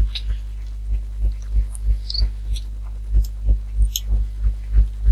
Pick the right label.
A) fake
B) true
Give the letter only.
B